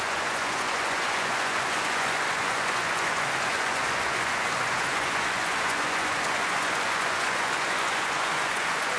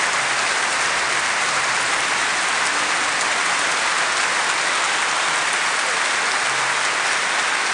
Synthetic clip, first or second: first